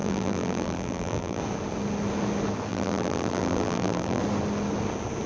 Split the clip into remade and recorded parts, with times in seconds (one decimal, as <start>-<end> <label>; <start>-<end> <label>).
0.0-1.4 remade; 1.4-2.7 recorded; 2.7-4.2 remade; 4.2-5.3 recorded